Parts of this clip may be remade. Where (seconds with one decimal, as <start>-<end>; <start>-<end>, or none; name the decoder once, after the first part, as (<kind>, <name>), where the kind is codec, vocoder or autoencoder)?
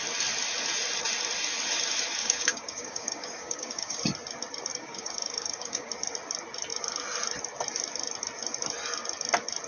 2.2-4.0 (codec, DAC); 4.7-5.9